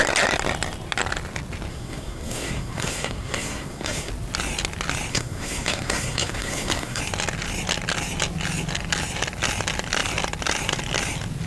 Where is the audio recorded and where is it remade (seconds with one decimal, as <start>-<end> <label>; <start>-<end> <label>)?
0.0-1.7 recorded; 1.7-4.1 remade; 4.1-5.1 recorded; 5.1-7.0 remade; 7.0-11.5 recorded